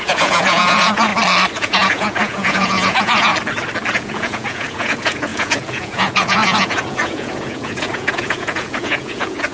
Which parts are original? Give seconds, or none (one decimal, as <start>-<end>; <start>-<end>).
1.1-1.6; 3.3-3.9